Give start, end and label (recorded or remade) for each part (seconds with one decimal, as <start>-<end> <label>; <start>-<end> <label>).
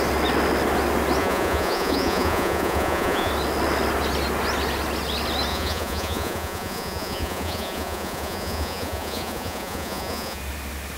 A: 0.0-1.2 recorded; 1.2-3.3 remade; 3.3-5.5 recorded; 5.5-10.4 remade; 10.4-11.0 recorded